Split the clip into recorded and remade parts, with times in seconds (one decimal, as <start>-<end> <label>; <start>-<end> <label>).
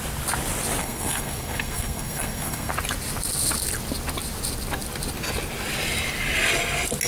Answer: 0.0-0.8 recorded; 0.8-2.7 remade; 2.7-7.1 recorded